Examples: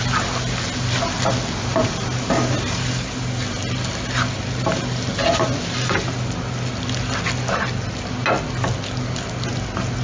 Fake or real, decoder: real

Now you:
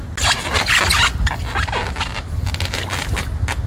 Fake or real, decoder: real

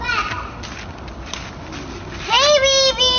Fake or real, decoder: real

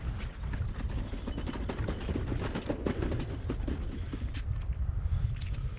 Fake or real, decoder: real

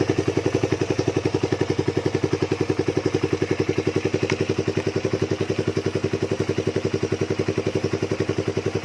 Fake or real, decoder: real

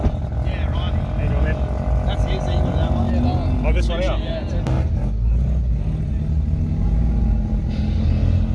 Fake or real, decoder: real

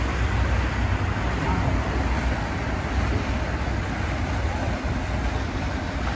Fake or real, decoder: fake, vocoder, BigVGAN v2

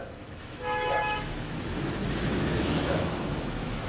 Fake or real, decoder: fake, autoencoder, DAC-VAE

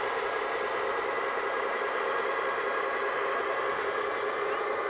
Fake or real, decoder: real